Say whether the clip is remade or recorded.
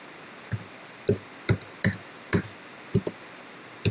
recorded